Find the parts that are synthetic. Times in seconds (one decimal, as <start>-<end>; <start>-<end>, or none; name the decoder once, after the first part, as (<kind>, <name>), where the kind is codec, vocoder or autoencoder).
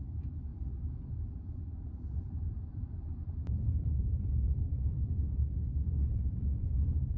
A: 0.0-0.5 (vocoder, BigVGAN v2); 1.1-7.2